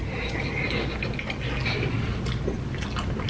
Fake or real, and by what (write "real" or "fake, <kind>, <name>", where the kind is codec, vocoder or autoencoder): real